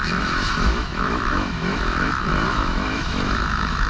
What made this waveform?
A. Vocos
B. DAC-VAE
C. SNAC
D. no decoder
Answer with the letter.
B